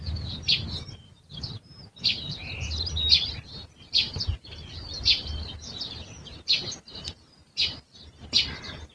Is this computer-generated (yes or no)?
yes